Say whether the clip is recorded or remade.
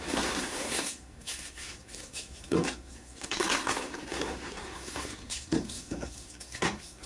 remade